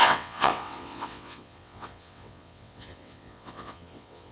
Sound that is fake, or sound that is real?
fake